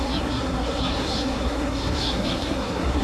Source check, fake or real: fake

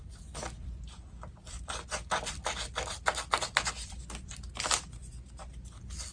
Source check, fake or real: real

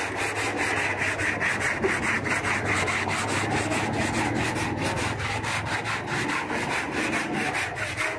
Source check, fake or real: real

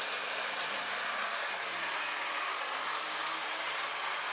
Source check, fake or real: real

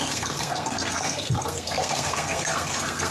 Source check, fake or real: fake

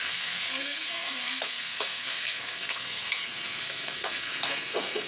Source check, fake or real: fake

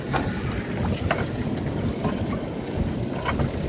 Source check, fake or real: real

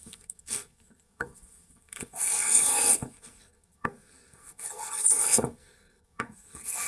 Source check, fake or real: fake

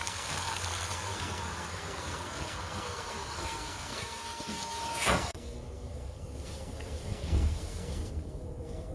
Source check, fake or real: fake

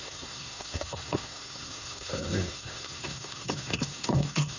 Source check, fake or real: fake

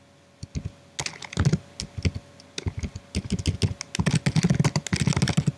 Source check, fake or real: real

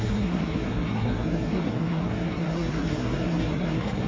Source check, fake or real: fake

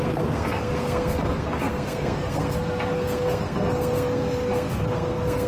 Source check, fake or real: fake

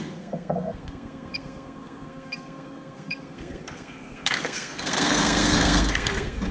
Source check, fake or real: fake